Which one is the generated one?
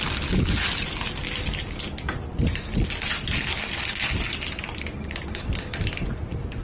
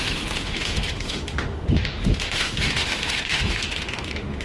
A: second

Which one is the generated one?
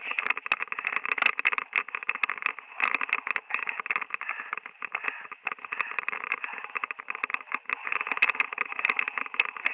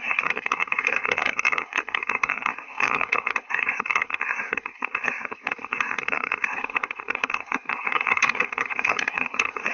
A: second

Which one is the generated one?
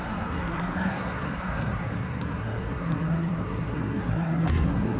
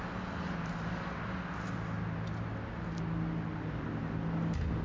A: first